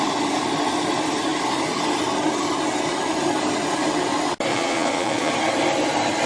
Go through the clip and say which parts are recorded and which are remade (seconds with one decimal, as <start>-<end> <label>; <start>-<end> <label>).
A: 0.0-4.5 recorded; 4.5-5.3 remade; 5.3-6.3 recorded